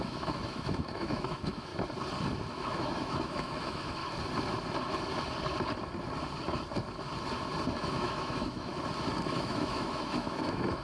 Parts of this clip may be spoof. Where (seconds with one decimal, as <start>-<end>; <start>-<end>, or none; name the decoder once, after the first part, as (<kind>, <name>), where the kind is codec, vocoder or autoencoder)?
0.0-1.7 (autoencoder, DAC-VAE); 2.5-4.0; 7.8-8.7; 9.3-10.8